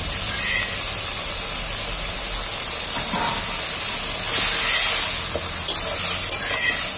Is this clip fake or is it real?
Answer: real